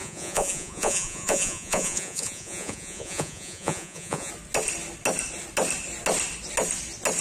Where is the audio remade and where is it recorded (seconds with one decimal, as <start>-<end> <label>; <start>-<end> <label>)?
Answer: 0.0-4.3 remade; 4.3-7.2 recorded